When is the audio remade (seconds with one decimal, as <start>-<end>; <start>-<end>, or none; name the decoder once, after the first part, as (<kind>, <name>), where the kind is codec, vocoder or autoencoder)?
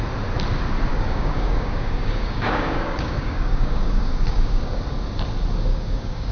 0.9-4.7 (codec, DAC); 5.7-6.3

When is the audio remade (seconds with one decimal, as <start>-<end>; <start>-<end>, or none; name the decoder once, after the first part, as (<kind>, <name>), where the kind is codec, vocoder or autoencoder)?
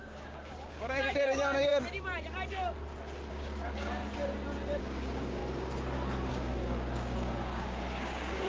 0.0-1.7 (codec, DAC); 3.3-4.0; 4.8-5.4; 6.3-8.5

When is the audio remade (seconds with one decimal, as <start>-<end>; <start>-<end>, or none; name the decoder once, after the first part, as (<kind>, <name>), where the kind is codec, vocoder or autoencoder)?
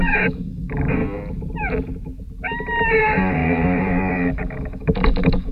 0.0-1.0 (codec, DAC); 3.0-5.5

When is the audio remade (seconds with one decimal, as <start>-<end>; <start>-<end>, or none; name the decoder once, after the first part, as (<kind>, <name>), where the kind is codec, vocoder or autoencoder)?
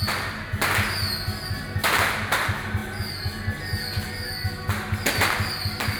none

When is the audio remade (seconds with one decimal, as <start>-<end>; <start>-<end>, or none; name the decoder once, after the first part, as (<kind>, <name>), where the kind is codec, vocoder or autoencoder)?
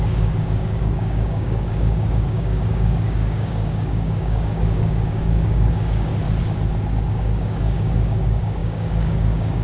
0.0-6.1 (codec, DAC); 7.1-9.6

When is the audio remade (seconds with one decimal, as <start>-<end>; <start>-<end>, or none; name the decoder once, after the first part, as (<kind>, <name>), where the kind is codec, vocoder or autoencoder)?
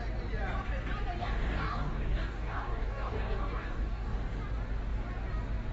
1.2-4.3 (codec, DAC)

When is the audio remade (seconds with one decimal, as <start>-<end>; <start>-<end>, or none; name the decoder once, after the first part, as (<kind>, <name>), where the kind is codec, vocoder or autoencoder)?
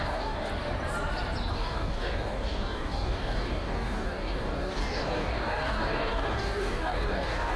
0.0-0.5 (codec, DAC); 1.5-7.6